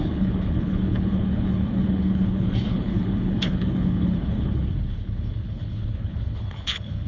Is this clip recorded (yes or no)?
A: no